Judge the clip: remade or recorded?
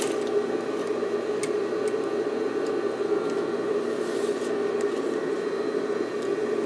recorded